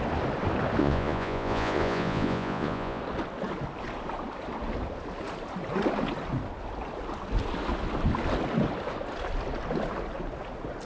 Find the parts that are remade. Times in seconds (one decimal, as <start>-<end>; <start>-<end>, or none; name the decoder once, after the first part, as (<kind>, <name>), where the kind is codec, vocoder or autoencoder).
0.8-3.0 (vocoder, Vocos)